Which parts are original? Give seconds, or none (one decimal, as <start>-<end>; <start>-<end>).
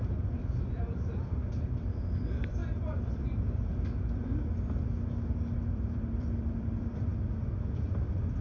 2.6-3.1; 3.7-5.7; 7.1-7.8